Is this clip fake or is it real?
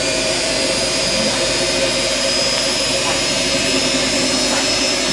fake